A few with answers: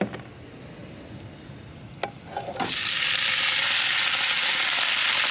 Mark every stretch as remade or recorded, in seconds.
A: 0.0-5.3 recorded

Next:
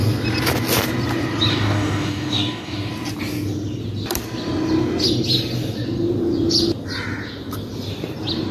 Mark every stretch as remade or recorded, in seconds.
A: 0.0-1.5 recorded; 1.5-2.9 remade; 2.9-8.5 recorded

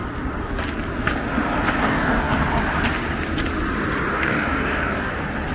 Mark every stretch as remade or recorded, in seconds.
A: 0.0-1.8 recorded; 1.8-2.3 remade; 2.3-4.1 recorded; 4.1-5.1 remade; 5.1-5.5 recorded

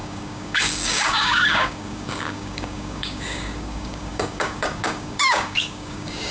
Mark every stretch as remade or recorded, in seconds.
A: 0.0-6.3 remade

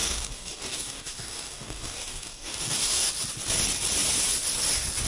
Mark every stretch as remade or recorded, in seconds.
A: 0.0-3.1 remade; 3.1-5.1 recorded